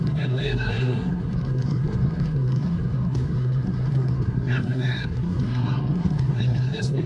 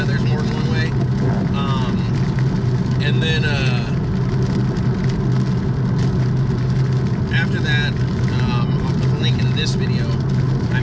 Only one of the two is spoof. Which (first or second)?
first